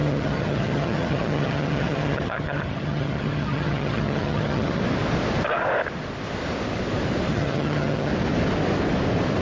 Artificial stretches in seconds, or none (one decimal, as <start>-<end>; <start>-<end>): 0.0-4.8; 7.3-8.1

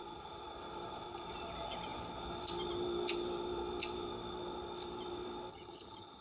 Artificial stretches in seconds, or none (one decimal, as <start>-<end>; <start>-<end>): 5.5-6.2

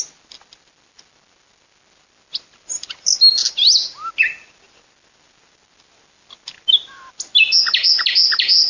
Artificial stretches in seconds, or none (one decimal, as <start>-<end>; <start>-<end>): none

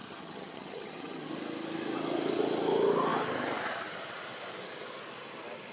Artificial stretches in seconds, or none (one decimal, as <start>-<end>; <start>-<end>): 0.0-1.3